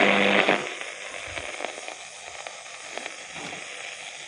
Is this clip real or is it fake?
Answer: real